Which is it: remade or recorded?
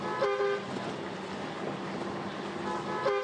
recorded